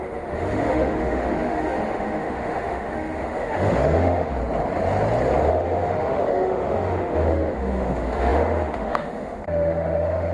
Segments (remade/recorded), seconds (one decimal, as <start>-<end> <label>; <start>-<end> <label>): 0.0-4.4 remade; 4.4-5.5 recorded; 5.5-10.3 remade